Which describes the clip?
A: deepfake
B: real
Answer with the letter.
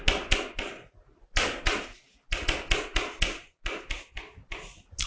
B